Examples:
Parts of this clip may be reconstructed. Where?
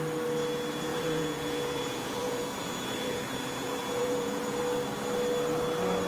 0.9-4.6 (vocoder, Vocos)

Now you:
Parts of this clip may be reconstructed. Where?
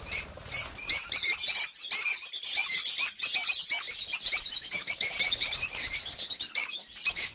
none